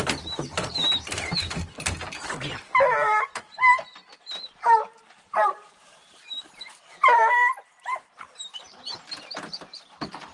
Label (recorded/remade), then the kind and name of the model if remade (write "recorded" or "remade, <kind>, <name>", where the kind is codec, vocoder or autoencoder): remade, vocoder, BigVGAN v2